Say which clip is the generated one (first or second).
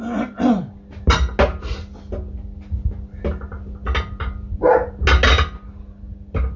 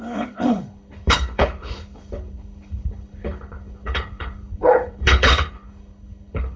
second